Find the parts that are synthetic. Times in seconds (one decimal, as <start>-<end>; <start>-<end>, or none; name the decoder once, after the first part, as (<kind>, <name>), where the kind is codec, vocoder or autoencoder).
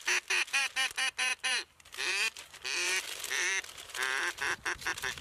0.6-5.2 (vocoder, BigVGAN v2)